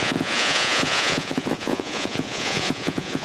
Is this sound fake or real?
fake